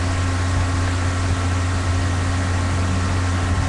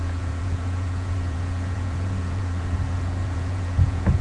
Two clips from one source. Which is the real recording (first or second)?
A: first